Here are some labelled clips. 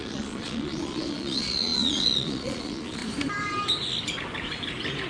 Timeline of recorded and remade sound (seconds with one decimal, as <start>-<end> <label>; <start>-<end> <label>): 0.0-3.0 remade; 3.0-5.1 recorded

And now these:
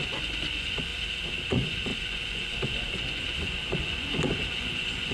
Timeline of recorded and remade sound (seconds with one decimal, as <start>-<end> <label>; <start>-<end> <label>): 0.0-0.9 remade; 0.9-1.5 recorded; 1.5-5.1 remade

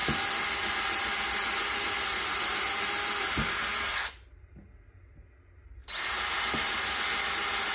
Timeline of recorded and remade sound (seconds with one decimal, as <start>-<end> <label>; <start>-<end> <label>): 0.0-7.7 recorded

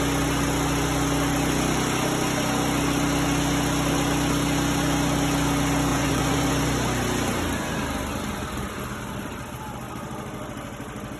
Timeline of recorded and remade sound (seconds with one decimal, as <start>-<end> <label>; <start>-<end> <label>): 0.0-5.9 recorded; 5.9-6.5 remade; 6.5-11.2 recorded

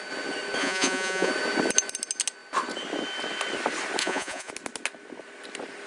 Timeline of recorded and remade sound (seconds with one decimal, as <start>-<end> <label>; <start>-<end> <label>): 0.0-0.6 recorded; 0.6-1.3 remade; 1.3-4.0 recorded; 4.0-4.5 remade; 4.5-5.9 recorded

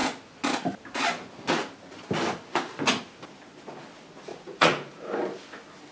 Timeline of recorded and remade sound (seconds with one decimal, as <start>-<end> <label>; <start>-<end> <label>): 0.0-4.3 recorded; 4.3-4.9 remade; 4.9-5.9 recorded